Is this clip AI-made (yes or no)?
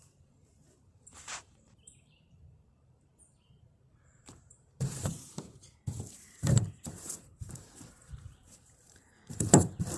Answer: yes